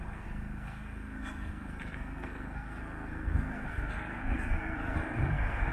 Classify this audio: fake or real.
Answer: fake